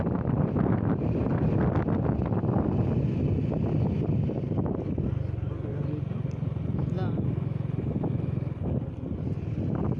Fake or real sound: real